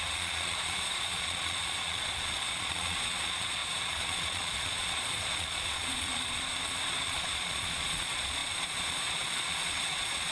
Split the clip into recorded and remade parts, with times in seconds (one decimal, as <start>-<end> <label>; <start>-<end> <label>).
0.0-10.3 remade